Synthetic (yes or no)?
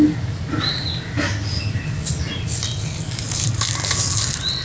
no